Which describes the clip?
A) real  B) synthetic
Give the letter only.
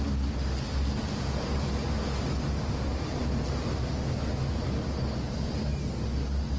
A